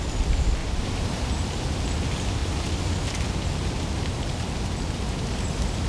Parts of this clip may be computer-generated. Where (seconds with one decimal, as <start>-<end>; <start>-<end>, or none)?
0.6-1.3